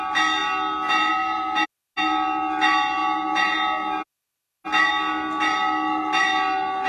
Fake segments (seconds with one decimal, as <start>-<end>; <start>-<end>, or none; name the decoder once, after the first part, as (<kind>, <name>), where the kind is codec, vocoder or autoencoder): none